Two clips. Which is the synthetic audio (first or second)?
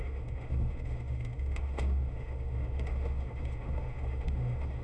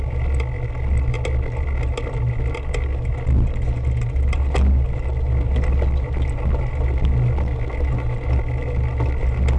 first